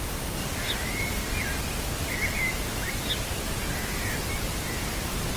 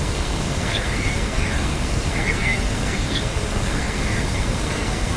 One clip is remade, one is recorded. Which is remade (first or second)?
second